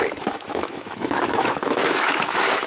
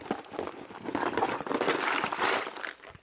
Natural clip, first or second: second